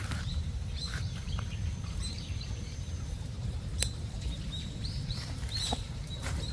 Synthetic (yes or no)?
yes